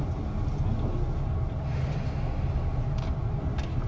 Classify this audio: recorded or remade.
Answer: recorded